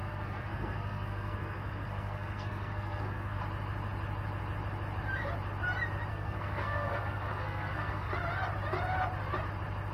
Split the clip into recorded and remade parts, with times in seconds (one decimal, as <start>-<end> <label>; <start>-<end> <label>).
0.0-3.4 remade; 3.4-6.1 recorded; 6.1-8.1 remade; 8.1-9.9 recorded